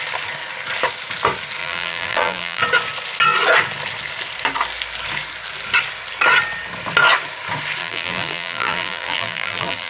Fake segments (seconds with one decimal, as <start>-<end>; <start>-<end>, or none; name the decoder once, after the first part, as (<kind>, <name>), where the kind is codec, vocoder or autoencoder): 1.6-2.6 (vocoder, BigVGAN v2); 7.8-9.9